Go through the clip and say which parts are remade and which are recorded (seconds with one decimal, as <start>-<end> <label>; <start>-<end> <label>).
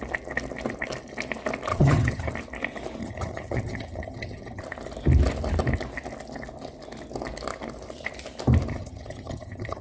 0.0-1.7 recorded; 1.7-2.3 remade; 2.3-3.0 recorded; 3.0-4.6 remade; 4.6-8.7 recorded; 8.7-9.8 remade